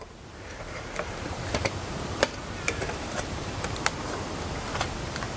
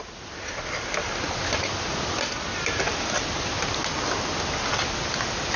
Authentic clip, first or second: second